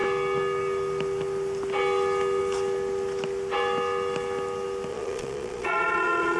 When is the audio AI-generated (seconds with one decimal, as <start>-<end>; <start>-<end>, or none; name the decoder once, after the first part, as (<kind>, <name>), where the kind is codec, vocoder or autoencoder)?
4.9-6.4 (vocoder, Vocos)